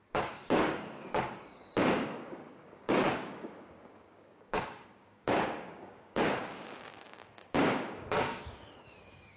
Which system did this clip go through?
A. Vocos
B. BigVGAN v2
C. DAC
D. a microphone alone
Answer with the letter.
C